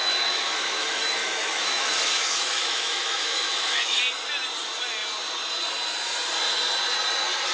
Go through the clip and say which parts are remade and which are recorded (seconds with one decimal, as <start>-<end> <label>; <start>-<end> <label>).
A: 0.0-4.0 remade; 4.0-7.5 recorded